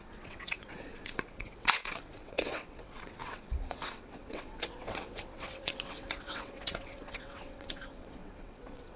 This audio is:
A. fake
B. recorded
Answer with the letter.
A